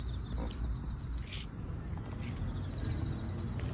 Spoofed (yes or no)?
no